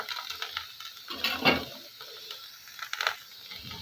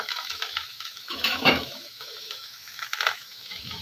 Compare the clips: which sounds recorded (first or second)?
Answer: first